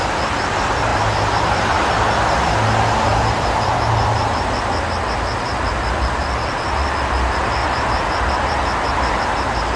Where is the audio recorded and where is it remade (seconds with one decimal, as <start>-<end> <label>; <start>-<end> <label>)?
0.0-3.1 recorded; 3.1-3.9 remade; 3.9-7.6 recorded; 7.6-9.2 remade; 9.2-9.8 recorded